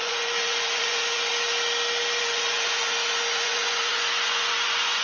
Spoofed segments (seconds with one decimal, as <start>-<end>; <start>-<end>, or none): 0.0-1.3; 2.2-5.0